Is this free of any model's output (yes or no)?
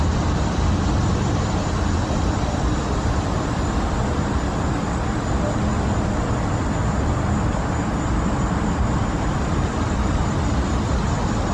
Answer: yes